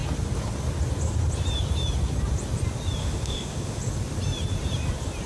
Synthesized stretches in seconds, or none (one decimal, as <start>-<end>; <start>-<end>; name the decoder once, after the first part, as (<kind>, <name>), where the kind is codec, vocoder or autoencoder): 3.0-3.8 (autoencoder, DAC-VAE)